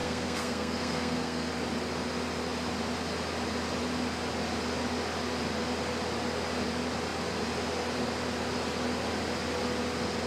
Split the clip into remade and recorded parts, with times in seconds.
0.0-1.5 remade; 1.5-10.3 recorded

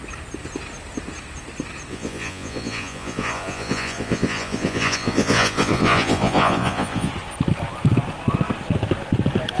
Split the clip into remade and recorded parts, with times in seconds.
0.0-1.9 recorded; 1.9-7.1 remade; 7.1-9.6 recorded

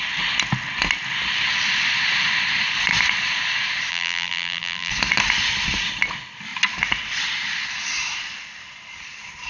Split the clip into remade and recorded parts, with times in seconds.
0.0-3.9 recorded; 3.9-4.9 remade; 4.9-9.5 recorded

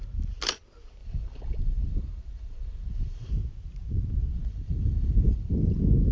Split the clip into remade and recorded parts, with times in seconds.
0.0-1.0 recorded; 1.0-3.3 remade; 3.3-4.3 recorded; 4.3-5.5 remade; 5.5-6.1 recorded